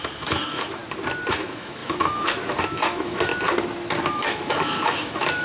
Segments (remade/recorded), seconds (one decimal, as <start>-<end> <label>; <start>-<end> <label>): 0.0-0.8 remade; 0.8-1.3 recorded; 1.3-3.3 remade; 3.3-4.1 recorded; 4.1-5.4 remade